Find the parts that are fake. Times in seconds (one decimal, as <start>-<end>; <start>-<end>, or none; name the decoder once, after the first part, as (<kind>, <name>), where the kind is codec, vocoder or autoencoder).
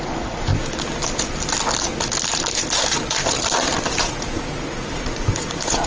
0.0-0.5 (vocoder, Vocos); 4.0-5.9